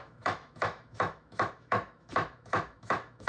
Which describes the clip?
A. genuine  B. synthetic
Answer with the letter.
B